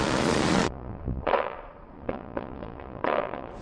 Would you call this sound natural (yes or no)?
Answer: no